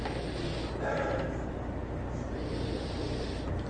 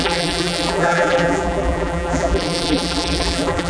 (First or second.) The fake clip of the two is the second